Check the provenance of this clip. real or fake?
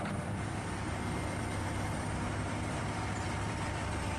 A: fake